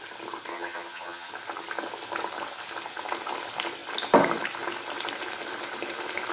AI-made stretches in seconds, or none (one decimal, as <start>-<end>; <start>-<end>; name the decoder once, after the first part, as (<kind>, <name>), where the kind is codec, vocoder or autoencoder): 0.5-1.3 (vocoder, HiFi-GAN)